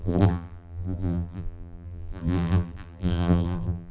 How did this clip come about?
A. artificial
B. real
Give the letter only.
A